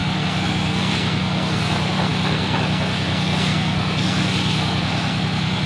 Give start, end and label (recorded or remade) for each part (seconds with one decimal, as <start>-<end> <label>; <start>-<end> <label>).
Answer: 0.0-5.7 remade